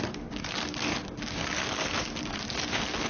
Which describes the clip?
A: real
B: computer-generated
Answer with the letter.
B